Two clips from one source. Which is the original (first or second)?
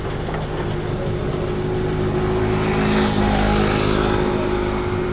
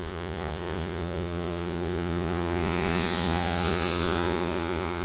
first